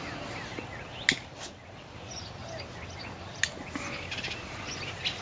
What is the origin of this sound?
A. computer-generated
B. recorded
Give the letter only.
B